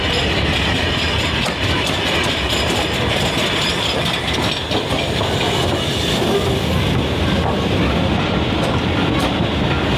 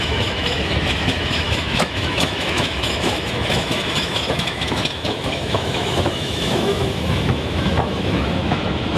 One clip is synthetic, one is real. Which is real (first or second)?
first